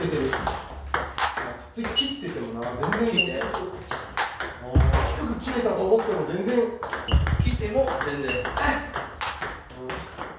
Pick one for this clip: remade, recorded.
recorded